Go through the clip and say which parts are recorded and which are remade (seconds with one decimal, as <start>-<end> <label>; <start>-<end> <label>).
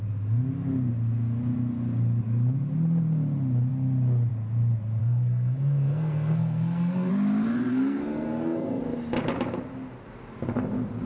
0.0-5.0 recorded; 5.0-7.1 remade; 7.1-7.7 recorded; 7.7-8.8 remade; 8.8-11.1 recorded